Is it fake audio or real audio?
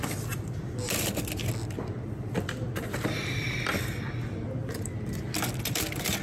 real